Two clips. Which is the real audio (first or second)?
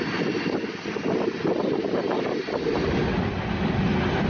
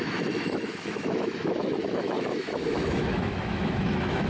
first